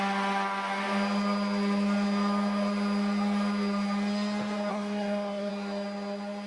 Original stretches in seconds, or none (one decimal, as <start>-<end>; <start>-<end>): 0.0-4.7; 5.5-6.5